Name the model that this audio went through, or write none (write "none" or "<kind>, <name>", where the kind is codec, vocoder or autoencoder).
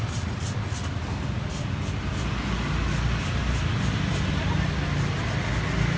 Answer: none